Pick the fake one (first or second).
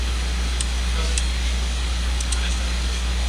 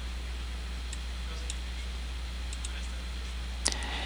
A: first